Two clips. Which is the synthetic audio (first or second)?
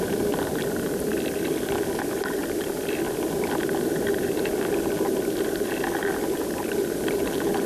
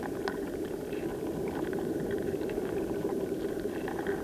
second